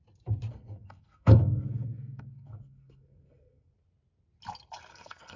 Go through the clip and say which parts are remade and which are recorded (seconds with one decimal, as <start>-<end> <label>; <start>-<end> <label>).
0.0-0.5 recorded; 0.5-3.7 remade; 3.7-4.9 recorded; 4.9-5.4 remade